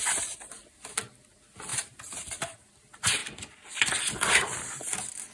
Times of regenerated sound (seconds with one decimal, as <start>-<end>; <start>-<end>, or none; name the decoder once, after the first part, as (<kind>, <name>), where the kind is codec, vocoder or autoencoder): 1.7-2.7 (vocoder, BigVGAN v2)